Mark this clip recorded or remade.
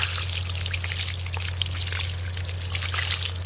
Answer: recorded